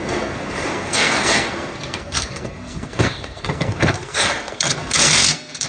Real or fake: fake